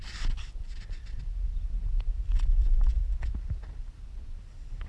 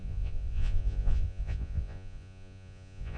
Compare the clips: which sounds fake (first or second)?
second